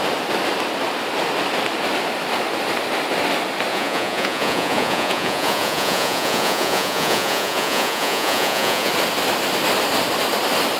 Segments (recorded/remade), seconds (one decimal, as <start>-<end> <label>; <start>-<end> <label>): 0.0-3.7 recorded; 3.7-8.9 remade; 8.9-10.8 recorded

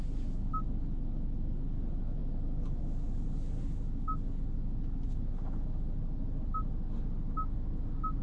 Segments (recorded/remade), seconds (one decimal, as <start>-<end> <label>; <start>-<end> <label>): 0.0-8.2 recorded

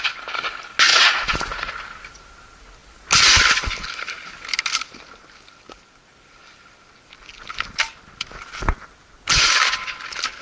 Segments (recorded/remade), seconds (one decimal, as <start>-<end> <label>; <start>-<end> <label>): 0.0-0.9 recorded; 0.9-1.7 remade; 1.7-10.4 recorded